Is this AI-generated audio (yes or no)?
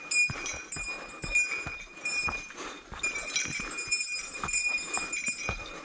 no